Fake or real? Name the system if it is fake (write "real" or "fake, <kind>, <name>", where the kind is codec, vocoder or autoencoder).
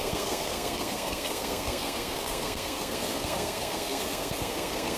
fake, codec, SNAC